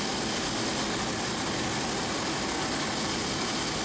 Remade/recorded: recorded